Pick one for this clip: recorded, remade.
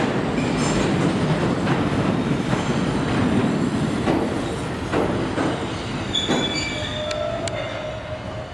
recorded